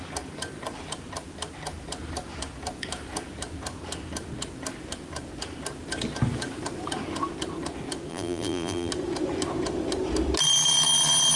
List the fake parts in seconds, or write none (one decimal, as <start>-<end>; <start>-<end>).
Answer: 8.1-8.9

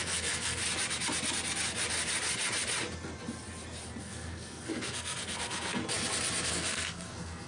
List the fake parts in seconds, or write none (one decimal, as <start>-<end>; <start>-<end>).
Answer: 0.0-0.6; 4.0-5.8; 6.5-7.5